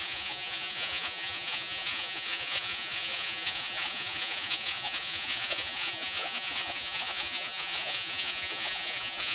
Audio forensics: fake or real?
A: fake